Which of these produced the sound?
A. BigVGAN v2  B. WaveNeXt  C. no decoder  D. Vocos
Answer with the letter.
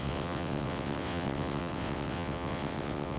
B